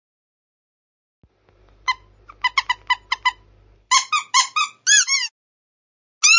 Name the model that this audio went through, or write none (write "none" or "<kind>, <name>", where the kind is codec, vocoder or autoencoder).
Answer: none